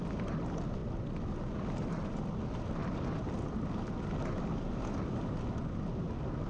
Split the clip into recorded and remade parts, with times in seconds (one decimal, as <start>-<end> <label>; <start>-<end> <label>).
0.0-6.5 recorded